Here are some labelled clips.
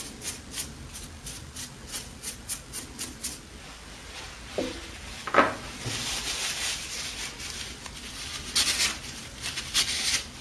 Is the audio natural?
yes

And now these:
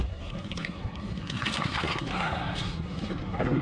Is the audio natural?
no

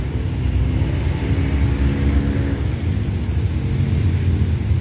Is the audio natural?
yes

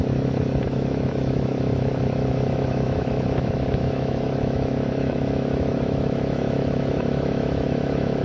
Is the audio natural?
no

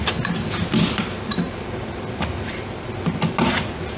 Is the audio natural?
yes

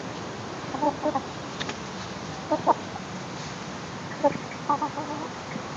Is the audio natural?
yes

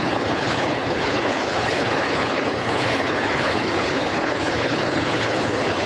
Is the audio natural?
no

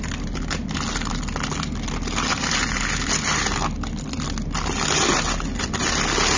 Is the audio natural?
yes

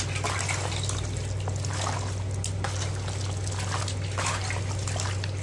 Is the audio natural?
yes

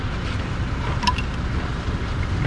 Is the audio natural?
yes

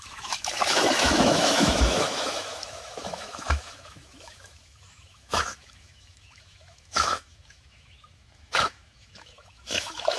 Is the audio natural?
no